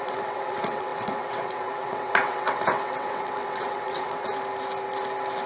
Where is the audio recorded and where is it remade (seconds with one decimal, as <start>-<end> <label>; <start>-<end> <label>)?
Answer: 0.0-4.3 remade; 4.3-5.5 recorded